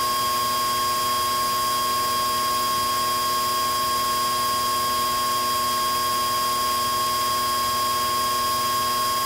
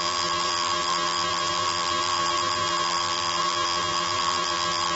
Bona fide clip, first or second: first